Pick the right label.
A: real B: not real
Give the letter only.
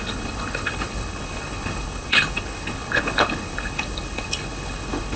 B